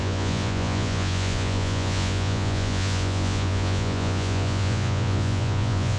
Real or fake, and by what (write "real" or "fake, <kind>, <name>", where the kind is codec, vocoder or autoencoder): fake, vocoder, Vocos